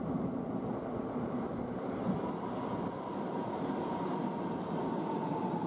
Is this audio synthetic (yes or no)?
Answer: no